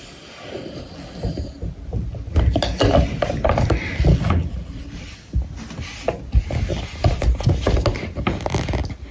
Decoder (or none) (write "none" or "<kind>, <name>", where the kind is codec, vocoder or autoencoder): none